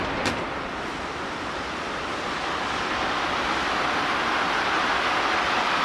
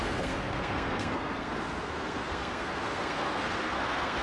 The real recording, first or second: first